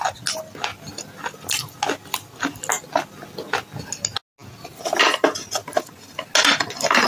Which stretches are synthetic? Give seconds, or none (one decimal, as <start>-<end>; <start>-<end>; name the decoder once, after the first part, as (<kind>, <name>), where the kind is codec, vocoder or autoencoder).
none